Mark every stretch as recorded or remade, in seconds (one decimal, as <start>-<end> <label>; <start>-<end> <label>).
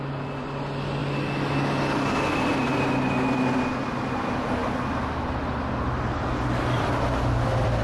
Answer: 0.0-7.8 recorded